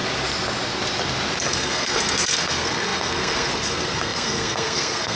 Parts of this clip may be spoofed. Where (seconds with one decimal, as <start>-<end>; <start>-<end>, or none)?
1.4-5.2